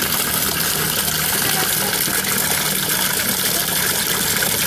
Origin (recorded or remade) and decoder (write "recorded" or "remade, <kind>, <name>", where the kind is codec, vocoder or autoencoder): recorded